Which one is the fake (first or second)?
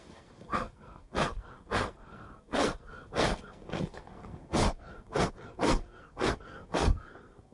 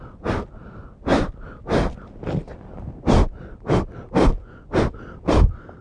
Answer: first